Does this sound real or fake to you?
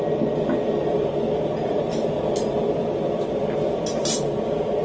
real